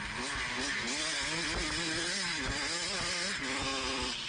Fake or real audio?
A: real